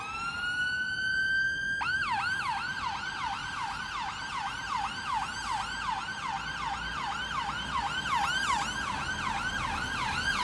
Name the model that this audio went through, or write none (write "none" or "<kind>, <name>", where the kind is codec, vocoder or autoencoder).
none